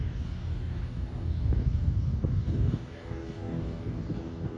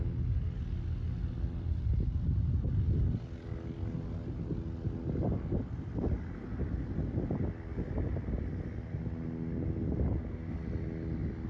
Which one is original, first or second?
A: second